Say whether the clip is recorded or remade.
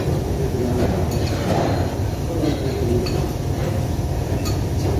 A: remade